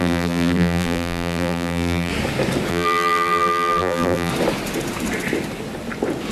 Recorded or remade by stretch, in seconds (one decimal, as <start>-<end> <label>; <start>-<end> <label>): 0.0-2.1 remade; 2.1-2.7 recorded; 2.7-4.3 remade; 4.3-6.3 recorded